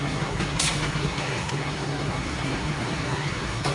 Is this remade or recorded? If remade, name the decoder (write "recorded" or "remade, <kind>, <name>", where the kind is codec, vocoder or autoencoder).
remade, codec, SNAC